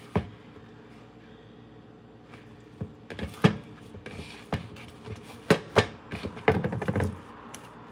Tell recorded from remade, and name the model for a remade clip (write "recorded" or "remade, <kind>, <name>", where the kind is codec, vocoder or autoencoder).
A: recorded